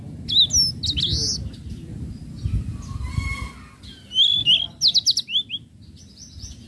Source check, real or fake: real